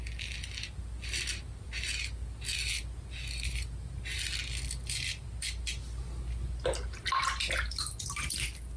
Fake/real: real